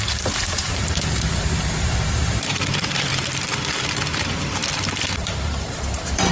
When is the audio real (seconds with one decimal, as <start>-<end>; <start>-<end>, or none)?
3.1-4.1; 4.6-5.3